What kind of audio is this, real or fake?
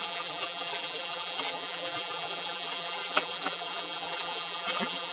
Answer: fake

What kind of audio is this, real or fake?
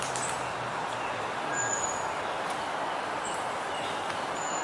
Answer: real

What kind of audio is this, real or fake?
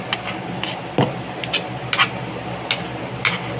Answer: real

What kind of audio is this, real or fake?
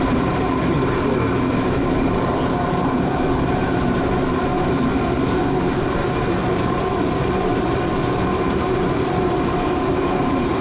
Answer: fake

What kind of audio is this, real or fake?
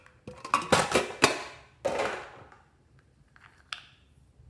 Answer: real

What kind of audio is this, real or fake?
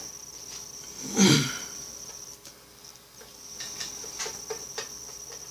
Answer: real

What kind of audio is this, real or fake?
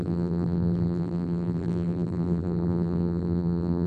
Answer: fake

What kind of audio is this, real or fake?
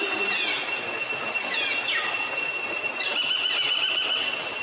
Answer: real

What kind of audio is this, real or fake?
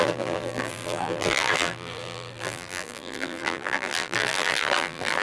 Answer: fake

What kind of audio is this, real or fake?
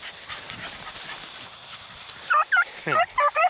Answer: real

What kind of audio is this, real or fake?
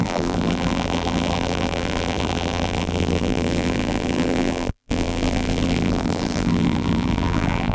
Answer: fake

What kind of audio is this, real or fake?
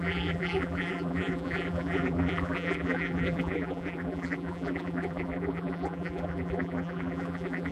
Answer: fake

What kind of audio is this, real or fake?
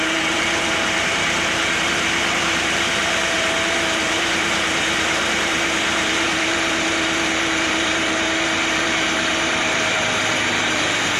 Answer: fake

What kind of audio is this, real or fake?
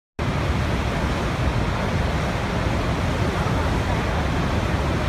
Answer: real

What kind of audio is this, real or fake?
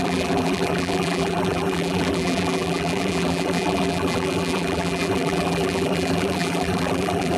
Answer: fake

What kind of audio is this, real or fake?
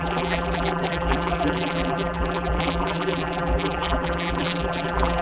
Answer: fake